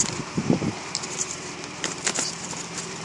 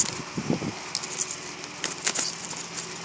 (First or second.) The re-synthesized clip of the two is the first